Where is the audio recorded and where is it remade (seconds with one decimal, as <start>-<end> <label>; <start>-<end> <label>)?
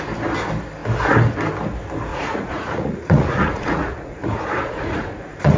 0.0-2.1 recorded; 2.1-5.6 remade